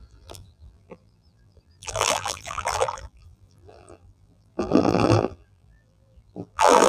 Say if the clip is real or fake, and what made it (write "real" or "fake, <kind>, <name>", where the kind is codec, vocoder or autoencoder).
fake, vocoder, BigVGAN v2